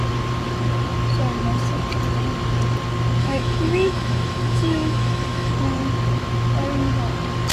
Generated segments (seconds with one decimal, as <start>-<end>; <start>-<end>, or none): 3.2-5.5